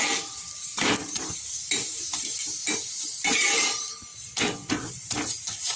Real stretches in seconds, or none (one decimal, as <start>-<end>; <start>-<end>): 2.6-3.2; 4.1-4.7